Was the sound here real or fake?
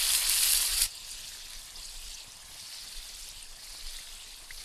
real